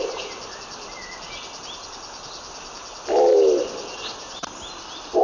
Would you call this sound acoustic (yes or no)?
yes